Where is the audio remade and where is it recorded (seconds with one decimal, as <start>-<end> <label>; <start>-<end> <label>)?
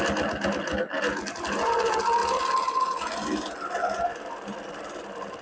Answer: 0.0-5.4 recorded